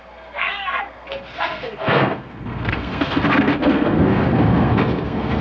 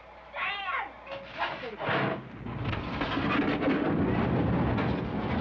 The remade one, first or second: first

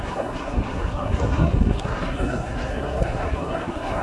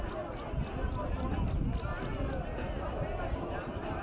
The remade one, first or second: first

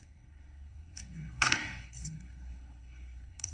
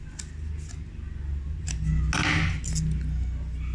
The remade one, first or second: first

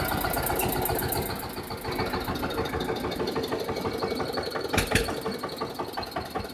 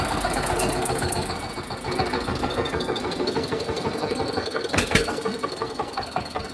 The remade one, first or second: second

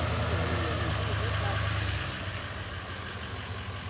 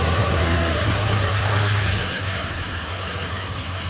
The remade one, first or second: second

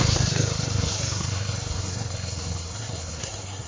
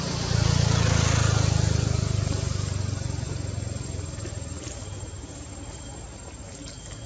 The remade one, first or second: first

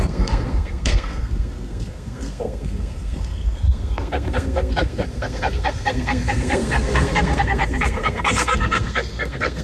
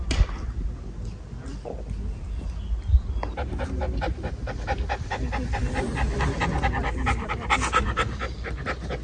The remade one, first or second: first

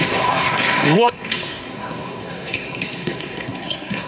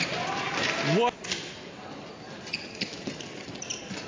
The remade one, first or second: first